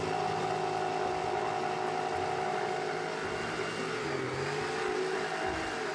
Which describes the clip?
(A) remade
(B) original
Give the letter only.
B